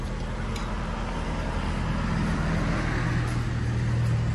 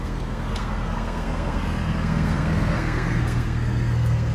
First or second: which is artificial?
second